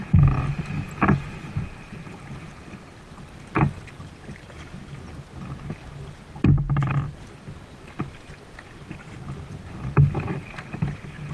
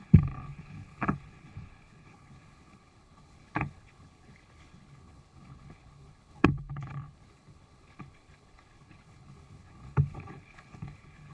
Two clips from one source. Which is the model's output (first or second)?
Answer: second